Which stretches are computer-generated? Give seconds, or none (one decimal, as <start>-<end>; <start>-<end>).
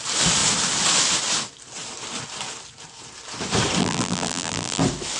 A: 3.8-4.8